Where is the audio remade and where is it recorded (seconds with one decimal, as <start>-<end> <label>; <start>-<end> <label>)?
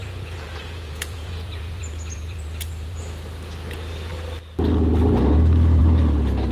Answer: 0.0-3.0 remade; 3.0-6.5 recorded